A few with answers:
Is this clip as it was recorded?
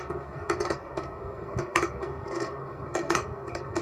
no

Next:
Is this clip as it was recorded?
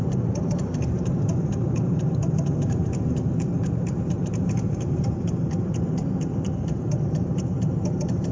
no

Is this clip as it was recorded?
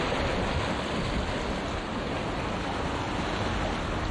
yes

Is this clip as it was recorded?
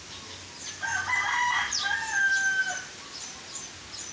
yes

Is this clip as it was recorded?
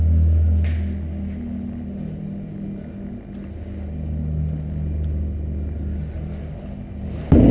yes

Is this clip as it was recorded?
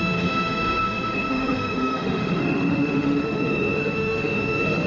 no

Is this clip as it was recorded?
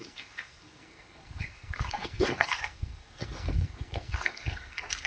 no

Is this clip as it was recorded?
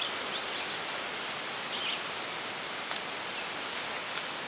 yes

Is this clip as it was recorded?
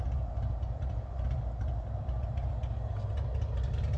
yes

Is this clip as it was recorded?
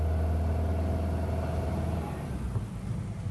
yes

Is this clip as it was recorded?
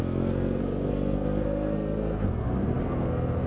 no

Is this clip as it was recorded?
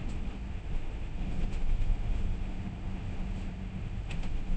no